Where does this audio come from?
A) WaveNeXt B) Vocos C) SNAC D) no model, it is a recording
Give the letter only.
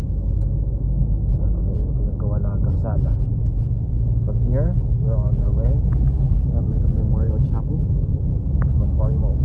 D